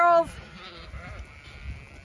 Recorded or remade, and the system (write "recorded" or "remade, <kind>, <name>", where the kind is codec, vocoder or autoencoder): recorded